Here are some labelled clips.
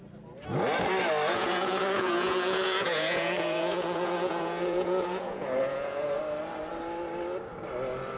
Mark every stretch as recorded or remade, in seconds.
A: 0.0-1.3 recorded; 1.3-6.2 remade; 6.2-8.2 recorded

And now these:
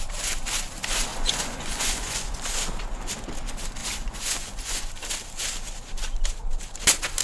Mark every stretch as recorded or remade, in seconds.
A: 0.0-1.1 recorded; 1.1-2.4 remade; 2.4-3.8 recorded; 3.8-4.9 remade; 4.9-7.2 recorded

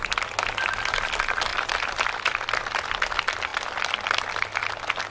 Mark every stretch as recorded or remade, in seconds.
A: 0.0-5.1 recorded

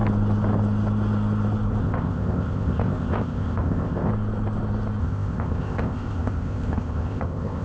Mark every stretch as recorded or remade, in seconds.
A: 0.0-1.8 recorded; 1.8-4.1 remade; 4.1-5.0 recorded; 5.0-7.6 remade